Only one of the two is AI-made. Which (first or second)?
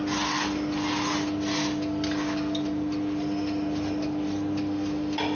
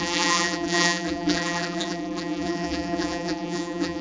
second